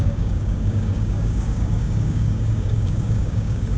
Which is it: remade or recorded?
remade